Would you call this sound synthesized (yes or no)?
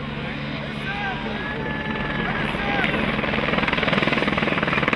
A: no